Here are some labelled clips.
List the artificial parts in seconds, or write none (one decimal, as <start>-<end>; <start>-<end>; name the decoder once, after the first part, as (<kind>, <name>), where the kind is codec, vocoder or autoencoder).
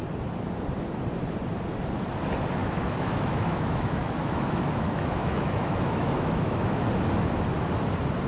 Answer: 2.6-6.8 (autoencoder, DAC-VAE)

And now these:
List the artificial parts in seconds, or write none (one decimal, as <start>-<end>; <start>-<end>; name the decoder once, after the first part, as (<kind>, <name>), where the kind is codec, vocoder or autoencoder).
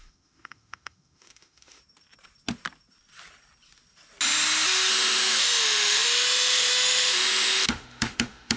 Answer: 0.0-1.8 (autoencoder, DAC-VAE); 4.9-8.6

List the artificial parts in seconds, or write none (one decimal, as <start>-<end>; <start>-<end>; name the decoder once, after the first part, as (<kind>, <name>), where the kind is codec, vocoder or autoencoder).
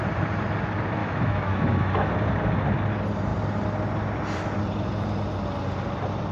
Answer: 1.0-2.1 (autoencoder, DAC-VAE)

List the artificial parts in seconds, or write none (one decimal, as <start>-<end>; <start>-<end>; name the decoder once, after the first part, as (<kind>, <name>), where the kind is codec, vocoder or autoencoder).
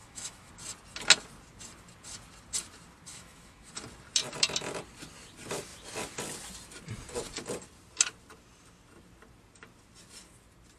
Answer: 0.0-0.5 (autoencoder, DAC-VAE); 3.1-3.7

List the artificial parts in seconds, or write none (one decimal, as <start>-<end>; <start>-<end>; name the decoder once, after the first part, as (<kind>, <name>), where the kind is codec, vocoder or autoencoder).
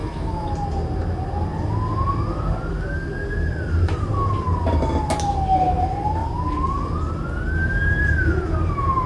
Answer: 0.0-0.5 (autoencoder, DAC-VAE)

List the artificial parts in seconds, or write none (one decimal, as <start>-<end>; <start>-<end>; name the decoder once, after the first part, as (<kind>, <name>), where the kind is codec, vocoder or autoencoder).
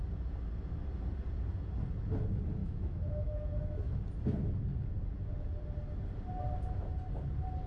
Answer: 2.6-4.0 (autoencoder, DAC-VAE)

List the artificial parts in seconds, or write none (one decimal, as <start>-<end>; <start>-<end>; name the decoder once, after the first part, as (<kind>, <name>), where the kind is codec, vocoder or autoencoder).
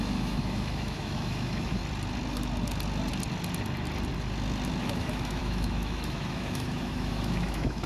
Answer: 0.0-1.8 (autoencoder, DAC-VAE); 4.8-7.9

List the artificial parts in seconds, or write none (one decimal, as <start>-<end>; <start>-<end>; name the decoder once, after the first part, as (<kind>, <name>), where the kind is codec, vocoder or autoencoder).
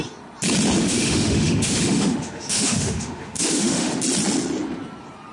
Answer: 0.8-4.0 (autoencoder, DAC-VAE)